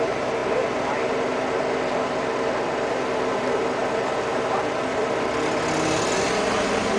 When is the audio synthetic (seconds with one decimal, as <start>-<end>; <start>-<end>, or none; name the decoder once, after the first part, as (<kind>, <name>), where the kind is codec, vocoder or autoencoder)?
none

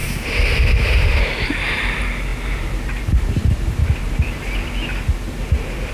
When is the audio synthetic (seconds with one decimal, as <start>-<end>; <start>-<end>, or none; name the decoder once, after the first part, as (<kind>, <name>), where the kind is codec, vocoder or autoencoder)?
none

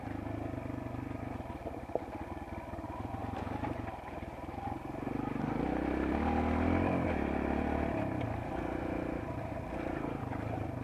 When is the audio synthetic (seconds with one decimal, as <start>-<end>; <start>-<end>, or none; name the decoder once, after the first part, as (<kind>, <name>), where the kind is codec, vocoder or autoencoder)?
none

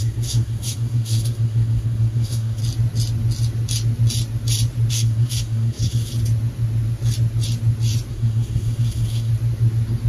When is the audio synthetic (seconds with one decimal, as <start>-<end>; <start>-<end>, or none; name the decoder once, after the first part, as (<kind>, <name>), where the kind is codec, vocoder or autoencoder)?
0.0-2.6 (codec, SNAC); 4.9-6.1; 8.1-9.3

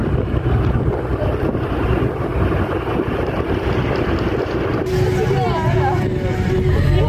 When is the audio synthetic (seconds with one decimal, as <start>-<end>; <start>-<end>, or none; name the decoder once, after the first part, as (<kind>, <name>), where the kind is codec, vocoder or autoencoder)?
none